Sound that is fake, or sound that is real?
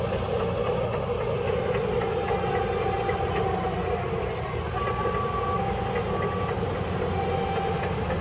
real